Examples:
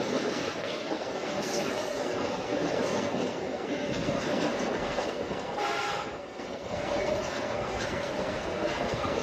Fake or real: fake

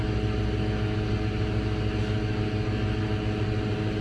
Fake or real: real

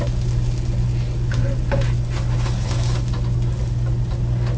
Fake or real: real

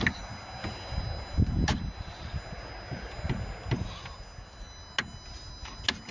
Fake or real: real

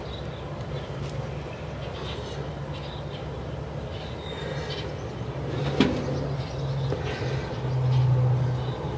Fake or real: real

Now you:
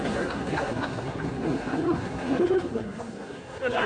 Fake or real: fake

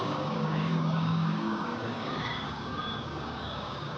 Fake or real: fake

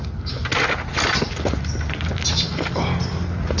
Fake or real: real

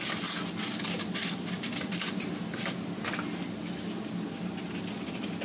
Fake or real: real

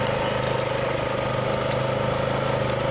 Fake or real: real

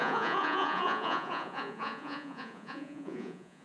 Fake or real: fake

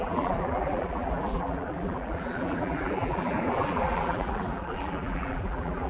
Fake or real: fake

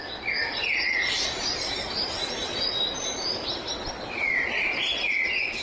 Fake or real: real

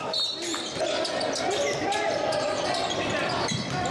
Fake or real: fake